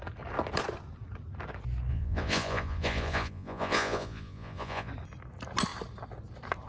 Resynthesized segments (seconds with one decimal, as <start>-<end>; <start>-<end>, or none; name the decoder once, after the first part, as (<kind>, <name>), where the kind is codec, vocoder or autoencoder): 1.9-4.9 (vocoder, Vocos)